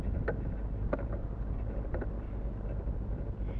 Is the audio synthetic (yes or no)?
no